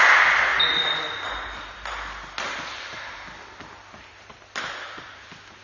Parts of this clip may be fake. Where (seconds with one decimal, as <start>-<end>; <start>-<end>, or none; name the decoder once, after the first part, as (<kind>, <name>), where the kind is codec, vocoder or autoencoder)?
none